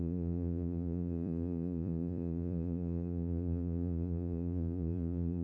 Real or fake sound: fake